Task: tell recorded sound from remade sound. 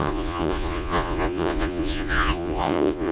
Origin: remade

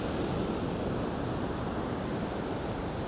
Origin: recorded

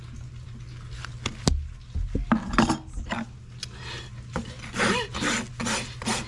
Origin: recorded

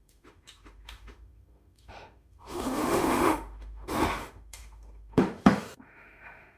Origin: remade